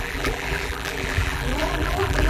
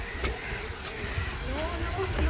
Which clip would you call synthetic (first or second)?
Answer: first